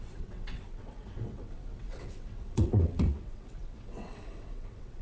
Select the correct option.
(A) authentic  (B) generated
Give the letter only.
B